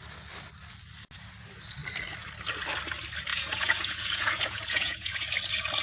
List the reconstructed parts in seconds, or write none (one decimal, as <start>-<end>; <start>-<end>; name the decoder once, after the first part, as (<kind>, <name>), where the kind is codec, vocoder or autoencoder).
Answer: 3.3-5.3 (vocoder, Vocos)

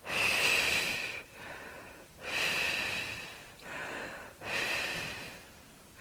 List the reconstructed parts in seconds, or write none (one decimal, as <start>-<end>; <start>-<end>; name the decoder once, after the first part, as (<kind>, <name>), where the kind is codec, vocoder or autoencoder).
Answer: 0.0-3.8 (vocoder, BigVGAN v2); 4.6-6.0